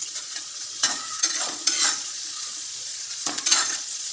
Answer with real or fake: fake